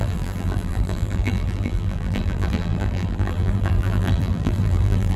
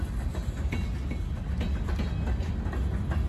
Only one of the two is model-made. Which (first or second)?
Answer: first